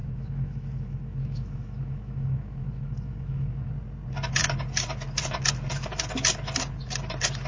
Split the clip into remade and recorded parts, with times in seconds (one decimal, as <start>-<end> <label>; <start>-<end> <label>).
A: 0.0-3.7 remade; 3.7-7.5 recorded